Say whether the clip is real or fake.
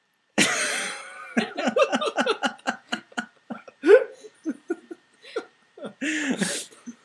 fake